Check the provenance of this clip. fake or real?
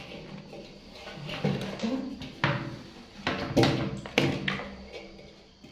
real